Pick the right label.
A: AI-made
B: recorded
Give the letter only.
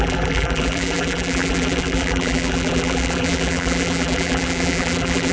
A